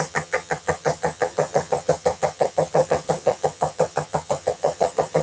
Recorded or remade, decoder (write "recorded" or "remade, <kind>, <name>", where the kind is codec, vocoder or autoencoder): remade, vocoder, HiFi-GAN